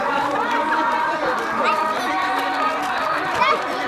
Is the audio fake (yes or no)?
no